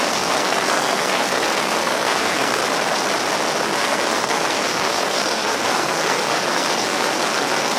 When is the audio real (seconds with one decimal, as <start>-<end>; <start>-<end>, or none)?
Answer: 2.6-3.6